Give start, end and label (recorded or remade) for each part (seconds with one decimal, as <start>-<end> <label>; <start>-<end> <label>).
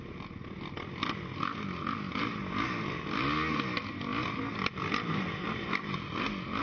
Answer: 0.0-6.6 recorded